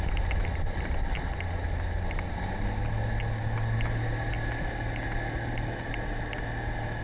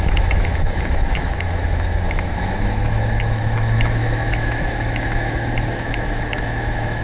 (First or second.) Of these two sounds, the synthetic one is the second